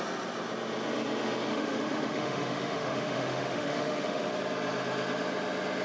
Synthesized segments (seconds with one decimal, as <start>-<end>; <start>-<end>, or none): 1.5-4.3